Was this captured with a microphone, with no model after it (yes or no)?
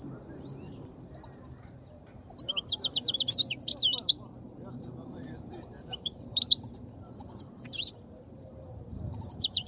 no